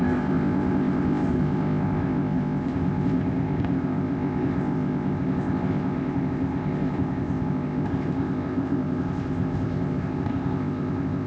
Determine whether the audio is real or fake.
fake